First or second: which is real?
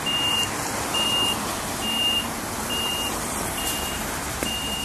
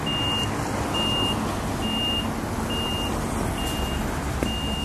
second